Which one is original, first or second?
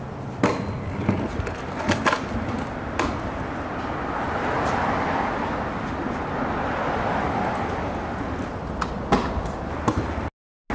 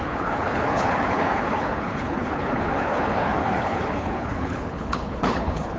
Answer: first